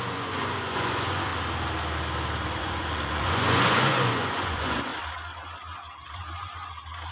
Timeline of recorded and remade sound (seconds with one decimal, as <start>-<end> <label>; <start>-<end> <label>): 0.0-1.3 remade; 1.3-2.6 recorded; 2.6-4.9 remade; 4.9-7.1 recorded